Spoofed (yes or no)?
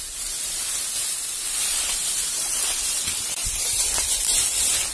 no